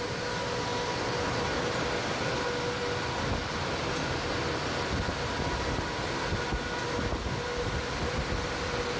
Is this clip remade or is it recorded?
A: recorded